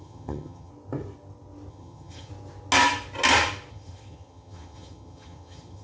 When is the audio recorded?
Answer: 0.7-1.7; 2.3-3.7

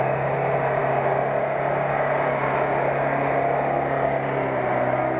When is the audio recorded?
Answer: 0.0-5.2

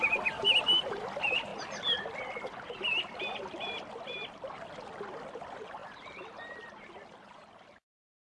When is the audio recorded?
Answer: 1.5-2.0